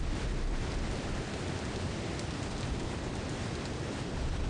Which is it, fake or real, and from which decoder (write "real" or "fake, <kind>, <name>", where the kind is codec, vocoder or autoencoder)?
real